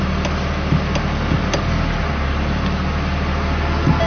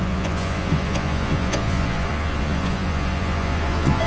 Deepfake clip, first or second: second